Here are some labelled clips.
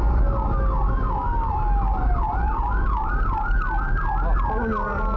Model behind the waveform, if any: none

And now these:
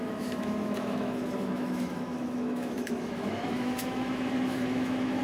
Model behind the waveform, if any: autoencoder, DAC-VAE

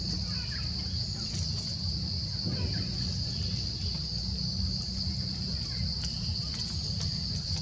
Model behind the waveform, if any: none